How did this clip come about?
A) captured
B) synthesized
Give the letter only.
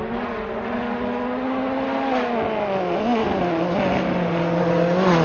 A